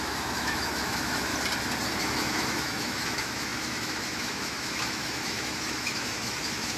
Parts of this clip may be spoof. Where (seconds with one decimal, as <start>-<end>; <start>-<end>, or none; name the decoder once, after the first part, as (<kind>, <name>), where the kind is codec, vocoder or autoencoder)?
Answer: 0.0-1.3 (autoencoder, DAC-VAE); 2.0-6.8